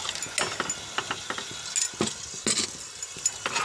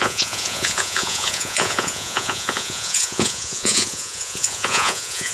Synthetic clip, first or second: second